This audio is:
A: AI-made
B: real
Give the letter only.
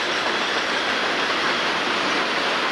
A